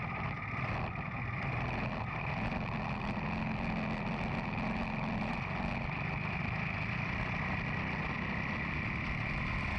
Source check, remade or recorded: recorded